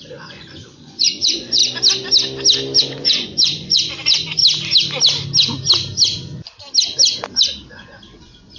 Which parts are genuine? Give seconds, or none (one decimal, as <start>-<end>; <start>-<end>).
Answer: 1.6-2.8; 4.4-7.7